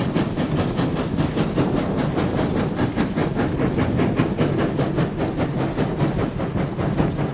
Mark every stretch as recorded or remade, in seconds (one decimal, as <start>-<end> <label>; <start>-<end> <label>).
0.0-7.3 recorded